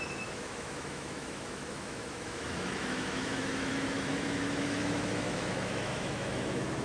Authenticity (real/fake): fake